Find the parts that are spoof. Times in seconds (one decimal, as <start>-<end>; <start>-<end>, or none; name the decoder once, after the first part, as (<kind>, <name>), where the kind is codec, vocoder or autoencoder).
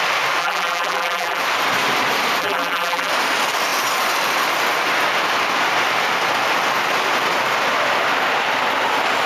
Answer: 0.4-1.4 (vocoder, BigVGAN v2); 2.4-3.1